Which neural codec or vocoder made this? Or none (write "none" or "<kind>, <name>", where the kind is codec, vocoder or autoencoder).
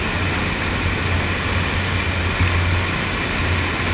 none